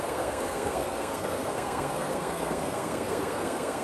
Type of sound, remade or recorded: remade